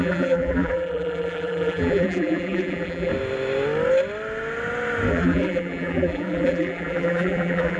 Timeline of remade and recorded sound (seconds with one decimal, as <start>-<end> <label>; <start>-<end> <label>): 0.0-3.1 remade; 3.1-5.1 recorded; 5.1-7.8 remade

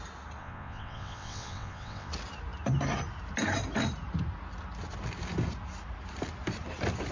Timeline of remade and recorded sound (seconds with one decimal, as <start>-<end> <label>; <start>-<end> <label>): 0.0-0.4 recorded; 0.4-2.1 remade; 2.1-7.1 recorded

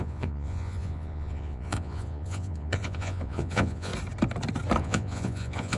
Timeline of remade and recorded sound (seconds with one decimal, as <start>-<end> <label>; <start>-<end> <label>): 0.0-3.9 remade; 3.9-4.8 recorded; 4.8-5.8 remade

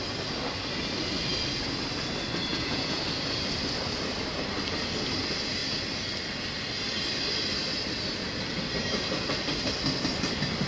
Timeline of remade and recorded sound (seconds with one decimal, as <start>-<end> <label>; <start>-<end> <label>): 0.0-2.5 recorded; 2.5-3.0 remade; 3.0-10.7 recorded

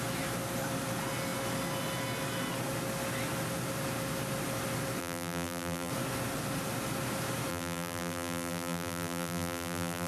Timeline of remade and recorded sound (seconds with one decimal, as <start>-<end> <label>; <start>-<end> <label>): 0.0-5.0 recorded; 5.0-5.9 remade; 5.9-7.5 recorded; 7.5-10.1 remade